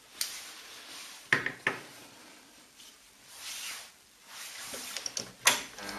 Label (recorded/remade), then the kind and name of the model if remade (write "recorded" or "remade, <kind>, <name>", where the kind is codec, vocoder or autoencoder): recorded